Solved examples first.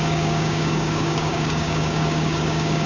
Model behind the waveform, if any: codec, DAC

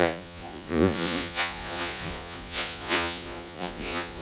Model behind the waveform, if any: vocoder, Vocos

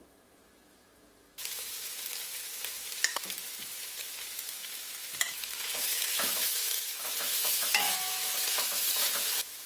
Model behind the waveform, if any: autoencoder, DAC-VAE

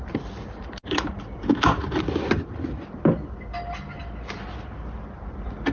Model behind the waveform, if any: none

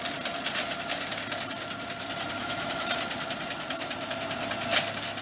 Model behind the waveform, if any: none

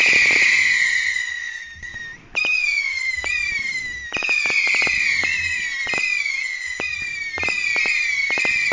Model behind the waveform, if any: none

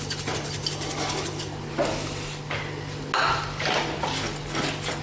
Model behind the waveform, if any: none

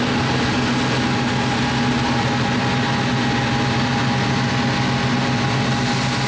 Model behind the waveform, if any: none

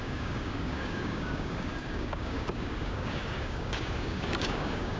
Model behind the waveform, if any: codec, DAC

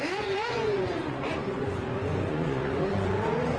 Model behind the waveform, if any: vocoder, Vocos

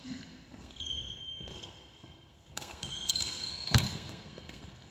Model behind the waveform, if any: codec, SNAC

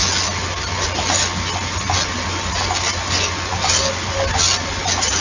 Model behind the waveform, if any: none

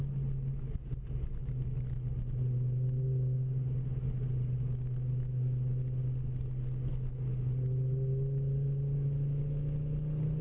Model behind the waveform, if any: none